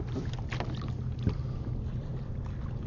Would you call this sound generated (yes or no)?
no